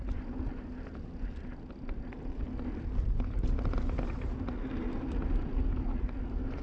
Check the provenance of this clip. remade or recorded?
recorded